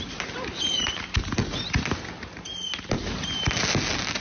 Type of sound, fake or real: real